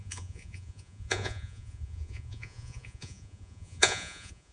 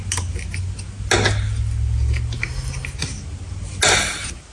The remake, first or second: first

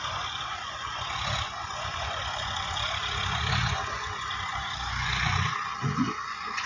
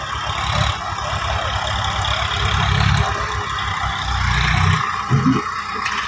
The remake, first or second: first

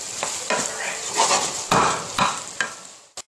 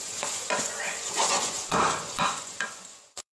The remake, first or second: second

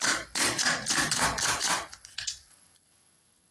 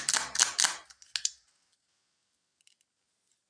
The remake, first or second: first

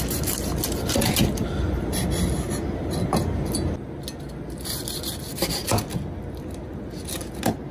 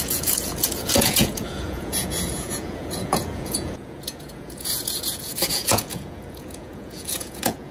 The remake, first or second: second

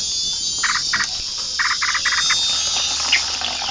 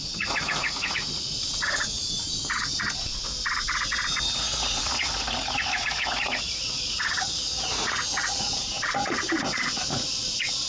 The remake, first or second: second